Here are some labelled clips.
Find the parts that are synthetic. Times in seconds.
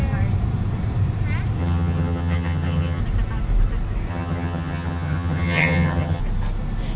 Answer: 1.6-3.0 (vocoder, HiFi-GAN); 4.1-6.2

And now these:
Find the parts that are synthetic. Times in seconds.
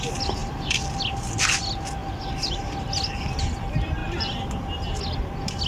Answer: 0.4-1.6 (vocoder, BigVGAN v2); 2.0-2.7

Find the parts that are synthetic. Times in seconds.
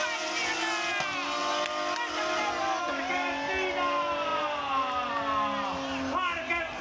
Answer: none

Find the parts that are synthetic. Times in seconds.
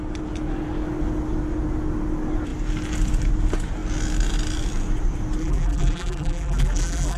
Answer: 5.4-7.2 (vocoder, BigVGAN v2)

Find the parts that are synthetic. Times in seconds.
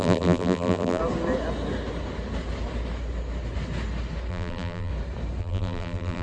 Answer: 0.0-1.0 (vocoder, BigVGAN v2); 4.3-4.9; 5.4-6.2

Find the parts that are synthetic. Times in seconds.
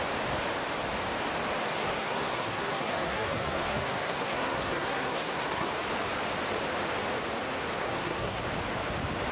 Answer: 1.6-5.7 (codec, SNAC); 7.8-8.4